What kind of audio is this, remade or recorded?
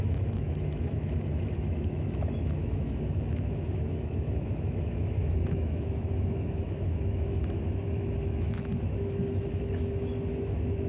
remade